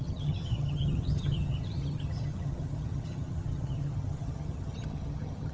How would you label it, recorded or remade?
remade